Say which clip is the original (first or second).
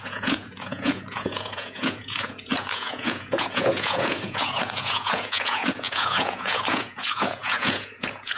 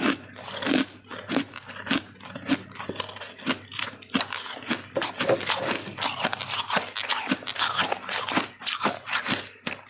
second